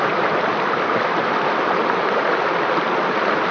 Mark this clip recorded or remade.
recorded